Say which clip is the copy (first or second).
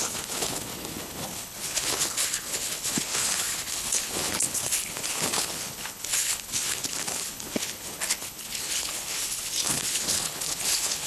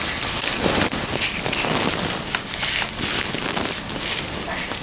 first